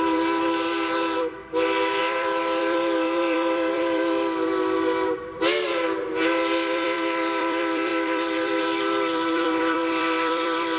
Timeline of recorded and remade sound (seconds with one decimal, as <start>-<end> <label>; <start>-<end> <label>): 0.0-1.4 remade; 1.4-2.0 recorded; 2.0-10.8 remade